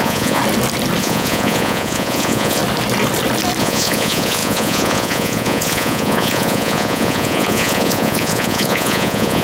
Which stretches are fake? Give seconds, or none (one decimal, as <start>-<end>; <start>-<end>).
0.0-0.4; 1.0-2.6; 3.6-9.4